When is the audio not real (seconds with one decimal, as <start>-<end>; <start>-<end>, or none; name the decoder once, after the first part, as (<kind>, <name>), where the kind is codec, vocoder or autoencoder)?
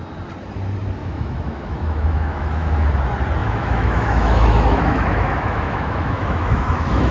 1.0-2.9 (autoencoder, DAC-VAE); 3.4-7.1